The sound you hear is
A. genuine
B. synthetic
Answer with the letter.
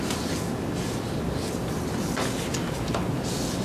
A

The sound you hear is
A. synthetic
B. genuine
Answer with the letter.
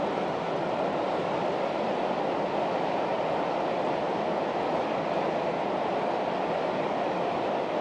B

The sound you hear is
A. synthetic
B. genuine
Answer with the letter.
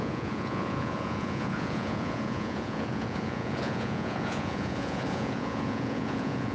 A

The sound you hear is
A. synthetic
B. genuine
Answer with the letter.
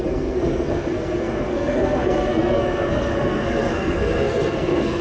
A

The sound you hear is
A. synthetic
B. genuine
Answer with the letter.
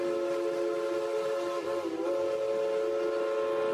B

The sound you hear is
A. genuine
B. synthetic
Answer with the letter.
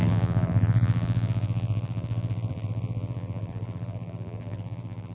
B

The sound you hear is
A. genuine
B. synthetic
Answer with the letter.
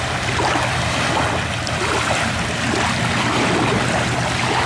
A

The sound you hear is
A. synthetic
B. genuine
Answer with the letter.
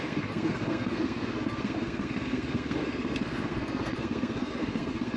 A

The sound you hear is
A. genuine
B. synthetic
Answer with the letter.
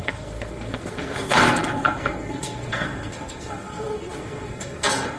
B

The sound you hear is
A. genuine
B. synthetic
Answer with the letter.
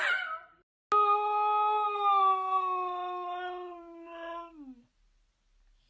A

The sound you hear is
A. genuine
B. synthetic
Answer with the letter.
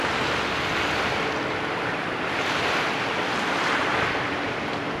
A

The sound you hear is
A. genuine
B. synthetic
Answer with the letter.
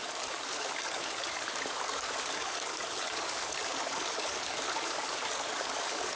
B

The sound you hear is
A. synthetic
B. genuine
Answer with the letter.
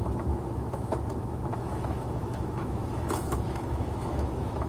A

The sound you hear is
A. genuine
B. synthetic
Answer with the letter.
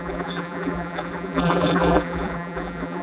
B